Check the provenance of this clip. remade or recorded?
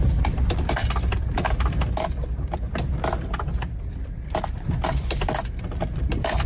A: recorded